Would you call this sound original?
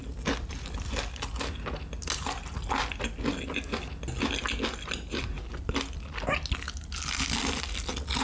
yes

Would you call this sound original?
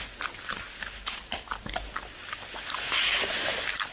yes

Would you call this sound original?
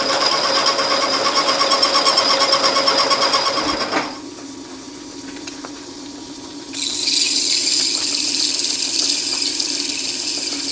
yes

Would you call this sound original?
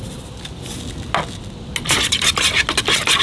yes